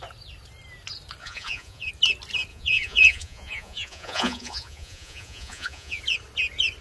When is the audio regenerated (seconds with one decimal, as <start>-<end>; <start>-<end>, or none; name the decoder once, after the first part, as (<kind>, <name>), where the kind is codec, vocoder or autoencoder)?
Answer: 1.2-1.9 (vocoder, Vocos); 2.5-6.0